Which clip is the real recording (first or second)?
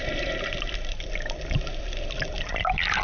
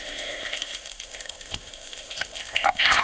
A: first